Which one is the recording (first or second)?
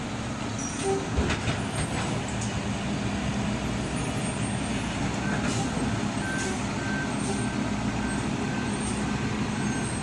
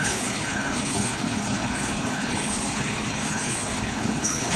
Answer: first